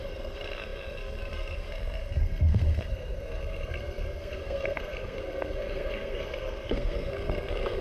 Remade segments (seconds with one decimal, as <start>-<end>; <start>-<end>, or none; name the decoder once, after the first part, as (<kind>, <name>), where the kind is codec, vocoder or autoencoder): 0.0-7.8 (codec, SNAC)